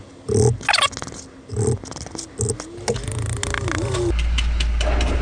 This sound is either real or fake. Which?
real